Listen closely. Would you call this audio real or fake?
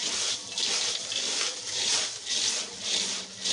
real